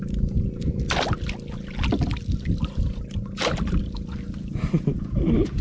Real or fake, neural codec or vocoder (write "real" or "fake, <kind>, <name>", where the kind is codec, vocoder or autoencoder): real